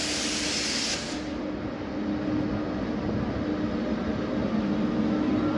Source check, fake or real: real